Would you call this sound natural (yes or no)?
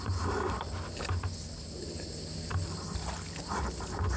yes